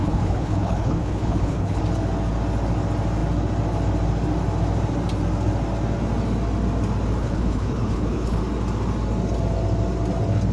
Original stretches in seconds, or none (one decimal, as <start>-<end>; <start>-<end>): 1.8-7.2; 8.4-10.5